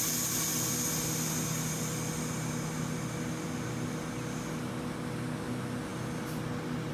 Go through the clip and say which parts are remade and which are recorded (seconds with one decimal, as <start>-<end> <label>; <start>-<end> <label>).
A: 0.0-6.9 recorded